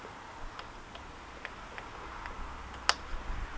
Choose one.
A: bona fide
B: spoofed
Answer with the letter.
A